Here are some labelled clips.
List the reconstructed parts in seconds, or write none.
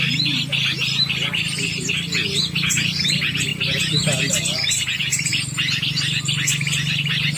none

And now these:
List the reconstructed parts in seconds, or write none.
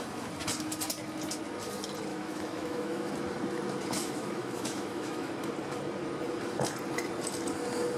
2.1-3.1 (autoencoder, DAC-VAE); 4.0-5.3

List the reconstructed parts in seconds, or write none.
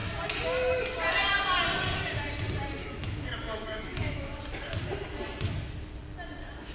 2.8-4.4 (autoencoder, DAC-VAE)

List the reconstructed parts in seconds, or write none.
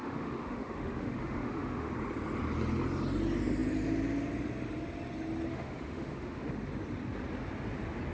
0.0-1.9 (autoencoder, DAC-VAE); 5.5-6.5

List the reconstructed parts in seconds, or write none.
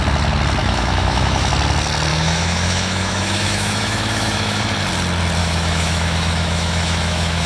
0.6-1.5 (autoencoder, DAC-VAE); 2.1-4.6; 5.4-7.5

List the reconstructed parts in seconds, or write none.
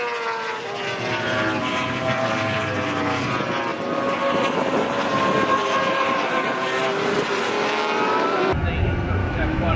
9.2-9.8 (autoencoder, DAC-VAE)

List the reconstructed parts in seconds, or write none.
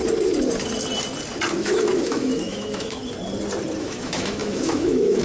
1.5-3.0 (autoencoder, DAC-VAE); 3.8-5.2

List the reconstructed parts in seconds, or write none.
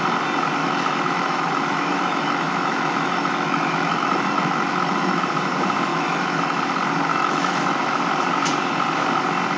0.6-5.2 (autoencoder, DAC-VAE); 5.9-6.6; 7.1-8.0